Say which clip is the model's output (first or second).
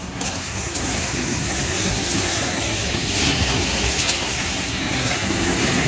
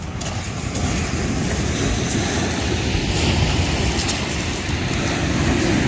first